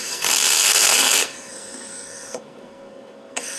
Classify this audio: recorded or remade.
remade